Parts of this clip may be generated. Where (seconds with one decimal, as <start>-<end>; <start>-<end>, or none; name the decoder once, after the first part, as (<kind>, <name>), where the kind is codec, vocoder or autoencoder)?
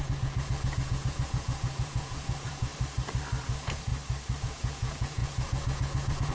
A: 0.0-2.7 (vocoder, Vocos); 3.4-3.9; 4.4-6.3